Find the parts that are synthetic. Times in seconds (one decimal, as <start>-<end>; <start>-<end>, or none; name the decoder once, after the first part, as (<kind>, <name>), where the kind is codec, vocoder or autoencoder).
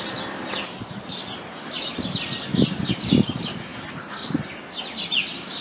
none